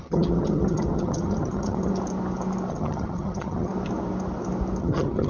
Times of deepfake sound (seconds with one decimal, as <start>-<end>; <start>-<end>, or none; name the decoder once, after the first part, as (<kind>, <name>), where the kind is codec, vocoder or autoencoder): 0.0-1.9 (vocoder, HiFi-GAN); 2.7-3.7; 4.8-5.3